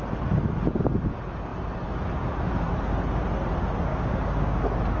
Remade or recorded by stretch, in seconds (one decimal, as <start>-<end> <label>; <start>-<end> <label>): 0.0-3.9 recorded; 3.9-4.6 remade; 4.6-5.0 recorded